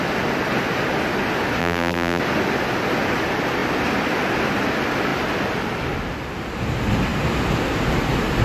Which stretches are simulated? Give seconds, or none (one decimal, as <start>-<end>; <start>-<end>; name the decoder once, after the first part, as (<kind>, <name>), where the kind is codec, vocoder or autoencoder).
1.6-2.2 (vocoder, BigVGAN v2)